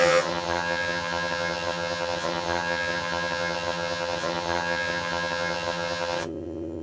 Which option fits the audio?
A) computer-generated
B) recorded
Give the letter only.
A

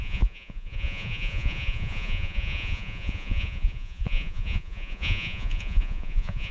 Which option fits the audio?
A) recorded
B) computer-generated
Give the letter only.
B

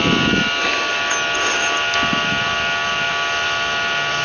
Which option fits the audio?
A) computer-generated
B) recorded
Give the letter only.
B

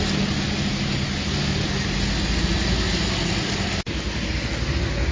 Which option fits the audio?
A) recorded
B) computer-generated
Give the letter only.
A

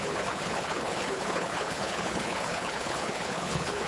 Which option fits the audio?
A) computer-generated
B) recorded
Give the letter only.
A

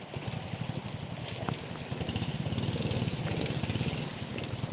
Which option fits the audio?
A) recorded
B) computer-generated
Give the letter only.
A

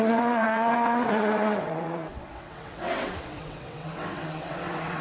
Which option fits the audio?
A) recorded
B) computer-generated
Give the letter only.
B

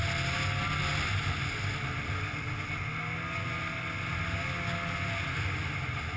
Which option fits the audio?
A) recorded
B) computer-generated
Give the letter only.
A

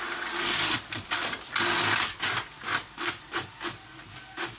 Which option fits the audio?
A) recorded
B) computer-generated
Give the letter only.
A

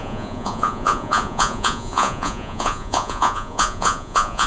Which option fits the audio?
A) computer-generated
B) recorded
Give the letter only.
A